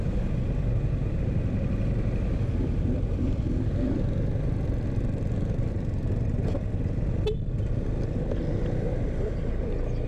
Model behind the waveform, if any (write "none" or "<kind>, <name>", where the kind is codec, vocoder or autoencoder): none